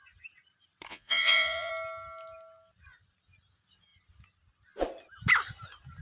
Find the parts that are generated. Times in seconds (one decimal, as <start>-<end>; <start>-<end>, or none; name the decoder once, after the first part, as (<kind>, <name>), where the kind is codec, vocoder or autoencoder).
0.9-1.7 (vocoder, Vocos)